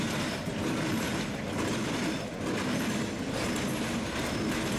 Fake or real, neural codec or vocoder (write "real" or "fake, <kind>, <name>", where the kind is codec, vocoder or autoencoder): real